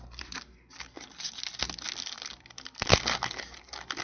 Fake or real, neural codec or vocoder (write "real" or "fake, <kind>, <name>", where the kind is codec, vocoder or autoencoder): real